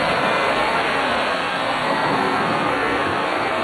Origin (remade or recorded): remade